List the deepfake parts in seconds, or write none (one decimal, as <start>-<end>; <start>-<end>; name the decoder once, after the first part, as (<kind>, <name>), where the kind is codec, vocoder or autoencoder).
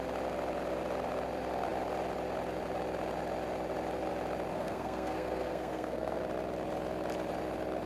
4.5-6.2 (codec, SNAC)